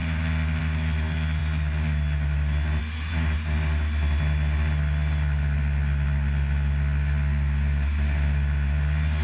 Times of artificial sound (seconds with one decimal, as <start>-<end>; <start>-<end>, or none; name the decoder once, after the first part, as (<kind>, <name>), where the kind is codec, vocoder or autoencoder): none